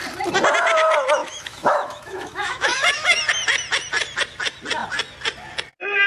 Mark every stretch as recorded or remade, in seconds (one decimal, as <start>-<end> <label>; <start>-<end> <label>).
0.0-1.2 recorded; 1.2-3.2 remade; 3.2-6.1 recorded